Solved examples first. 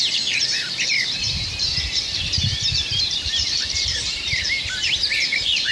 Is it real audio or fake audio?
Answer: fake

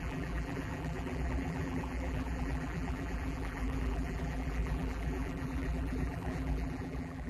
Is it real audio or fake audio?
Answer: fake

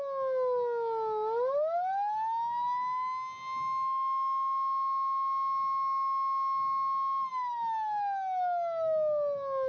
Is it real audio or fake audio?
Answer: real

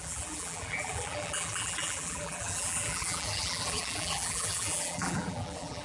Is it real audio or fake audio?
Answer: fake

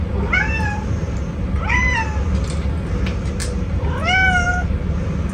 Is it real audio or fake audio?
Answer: real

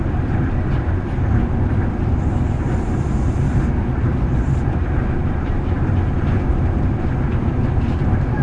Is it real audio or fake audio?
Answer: fake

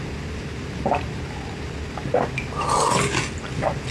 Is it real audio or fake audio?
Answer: real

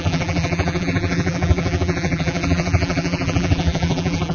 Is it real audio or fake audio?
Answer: fake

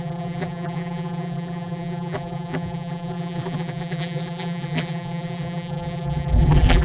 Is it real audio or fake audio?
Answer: fake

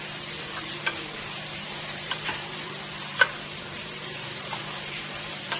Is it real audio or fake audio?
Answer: fake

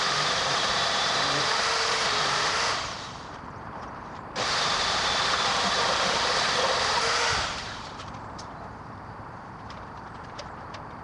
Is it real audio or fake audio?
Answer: fake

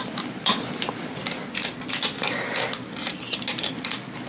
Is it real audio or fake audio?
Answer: real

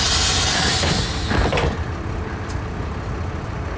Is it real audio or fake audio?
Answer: real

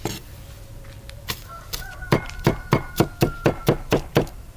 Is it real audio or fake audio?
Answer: fake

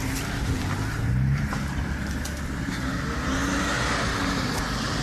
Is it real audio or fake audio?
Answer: real